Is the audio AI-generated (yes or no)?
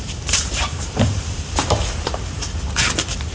yes